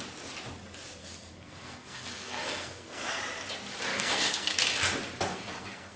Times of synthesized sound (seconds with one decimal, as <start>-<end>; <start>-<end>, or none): 1.0-3.2; 3.9-4.6; 5.3-6.0